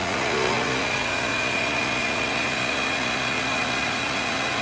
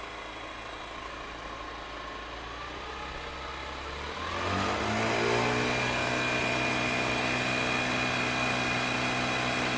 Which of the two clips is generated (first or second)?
first